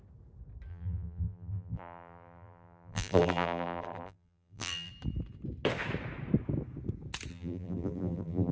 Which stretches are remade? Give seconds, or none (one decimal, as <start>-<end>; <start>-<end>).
0.7-4.9; 7.3-8.5